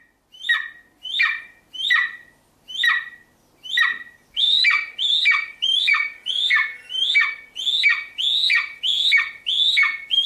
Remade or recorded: recorded